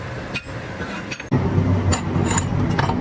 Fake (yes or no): no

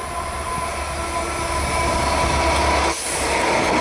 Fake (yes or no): no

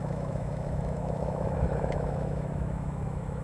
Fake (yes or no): yes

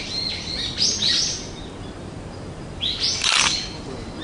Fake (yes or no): no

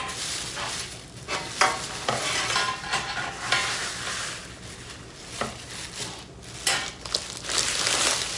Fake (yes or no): no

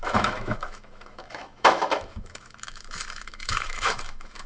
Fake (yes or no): yes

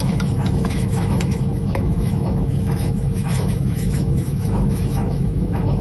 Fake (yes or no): yes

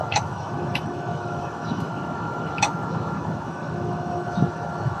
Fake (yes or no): yes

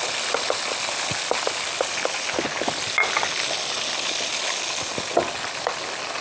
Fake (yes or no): no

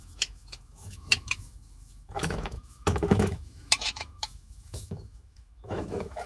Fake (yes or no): yes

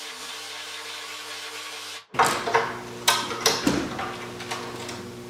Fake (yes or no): no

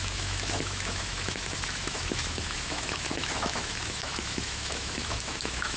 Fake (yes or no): yes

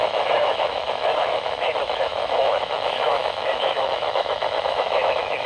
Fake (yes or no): yes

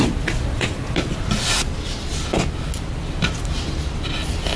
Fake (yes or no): no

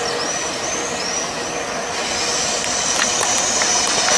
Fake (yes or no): no